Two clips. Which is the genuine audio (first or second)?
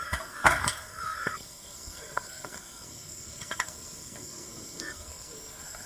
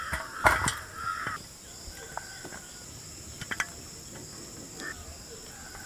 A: second